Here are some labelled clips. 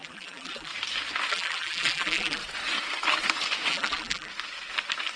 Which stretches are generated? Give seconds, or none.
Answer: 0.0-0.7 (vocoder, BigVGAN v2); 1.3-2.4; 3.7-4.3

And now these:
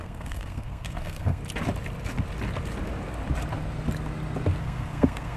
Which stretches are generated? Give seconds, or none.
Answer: 0.0-1.4 (codec, SNAC); 4.6-5.4

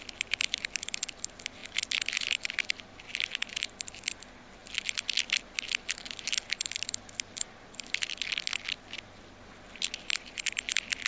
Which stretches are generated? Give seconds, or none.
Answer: none

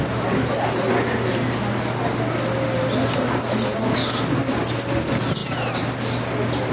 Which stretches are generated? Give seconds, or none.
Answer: none

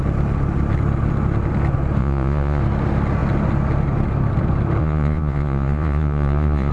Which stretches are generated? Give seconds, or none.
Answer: 2.0-2.6 (vocoder, Vocos); 4.8-6.7